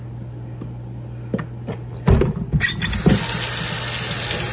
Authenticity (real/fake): real